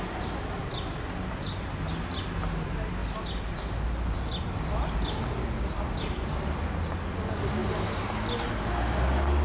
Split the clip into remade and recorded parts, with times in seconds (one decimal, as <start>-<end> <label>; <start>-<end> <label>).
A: 0.0-9.4 recorded